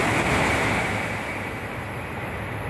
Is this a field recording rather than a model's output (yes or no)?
yes